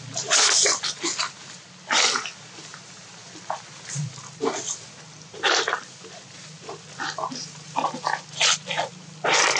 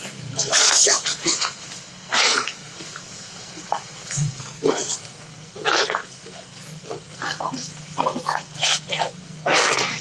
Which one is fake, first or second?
second